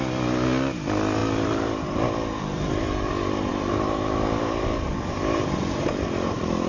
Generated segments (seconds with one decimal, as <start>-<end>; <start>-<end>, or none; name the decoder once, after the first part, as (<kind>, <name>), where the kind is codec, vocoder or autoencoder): 1.2-3.1 (vocoder, BigVGAN v2); 3.5-6.7